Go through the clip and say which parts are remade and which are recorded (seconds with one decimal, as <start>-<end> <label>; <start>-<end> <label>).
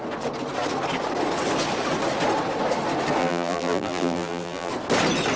0.0-3.2 recorded; 3.2-4.7 remade; 4.7-5.4 recorded